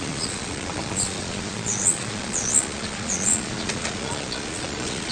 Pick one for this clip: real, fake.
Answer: fake